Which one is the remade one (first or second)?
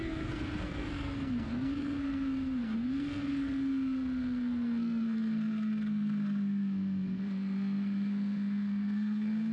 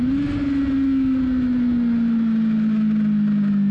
first